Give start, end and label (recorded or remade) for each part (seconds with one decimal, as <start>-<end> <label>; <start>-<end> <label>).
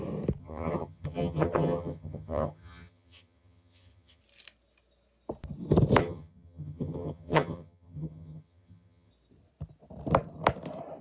0.0-0.4 recorded; 0.4-4.2 remade; 4.2-6.0 recorded; 6.0-9.1 remade; 9.1-11.0 recorded